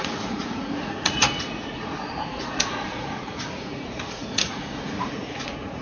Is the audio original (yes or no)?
no